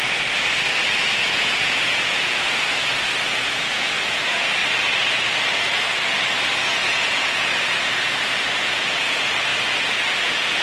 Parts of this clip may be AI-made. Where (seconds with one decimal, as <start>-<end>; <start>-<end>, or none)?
1.3-2.7; 3.2-4.6; 6.6-9.5; 10.2-10.6